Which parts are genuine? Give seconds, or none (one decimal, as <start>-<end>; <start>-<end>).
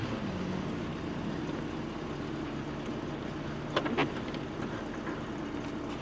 0.0-6.0